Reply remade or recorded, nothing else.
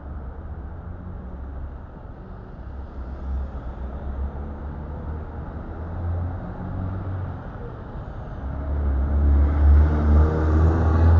recorded